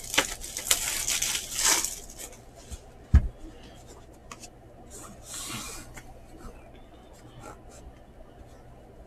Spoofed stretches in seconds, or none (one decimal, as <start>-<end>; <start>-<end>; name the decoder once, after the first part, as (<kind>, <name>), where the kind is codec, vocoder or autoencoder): none